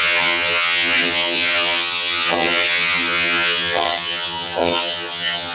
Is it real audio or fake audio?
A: fake